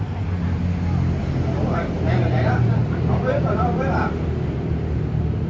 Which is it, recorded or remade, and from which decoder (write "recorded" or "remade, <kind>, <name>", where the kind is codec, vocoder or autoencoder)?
recorded